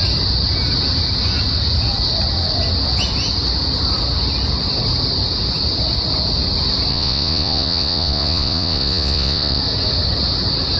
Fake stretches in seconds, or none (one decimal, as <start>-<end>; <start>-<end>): 6.9-9.6